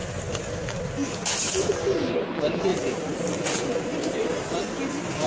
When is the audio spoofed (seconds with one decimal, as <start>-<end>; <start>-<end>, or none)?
none